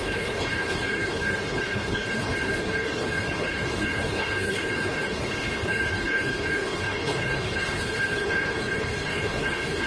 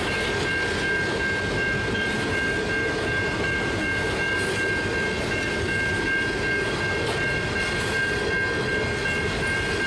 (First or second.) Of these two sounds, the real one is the second